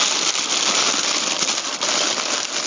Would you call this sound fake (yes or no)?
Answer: no